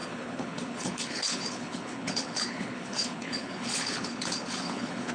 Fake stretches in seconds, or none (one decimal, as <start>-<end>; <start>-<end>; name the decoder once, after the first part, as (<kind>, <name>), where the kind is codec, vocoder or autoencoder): 0.0-5.1 (codec, HILCodec)